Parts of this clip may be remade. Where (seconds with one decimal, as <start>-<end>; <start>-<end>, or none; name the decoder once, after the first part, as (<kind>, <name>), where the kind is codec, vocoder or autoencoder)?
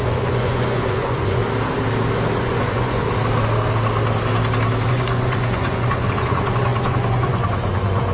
0.0-1.4 (vocoder, Vocos); 2.4-3.0; 4.9-8.1